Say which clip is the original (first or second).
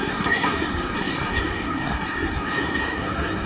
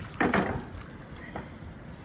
second